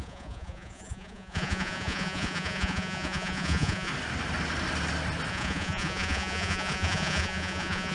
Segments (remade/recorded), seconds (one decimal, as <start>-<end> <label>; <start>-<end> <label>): 0.0-3.9 remade; 3.9-5.3 recorded; 5.3-7.9 remade